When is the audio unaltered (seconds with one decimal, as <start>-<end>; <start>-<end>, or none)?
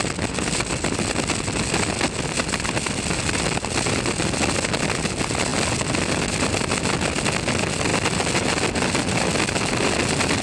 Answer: 0.0-10.4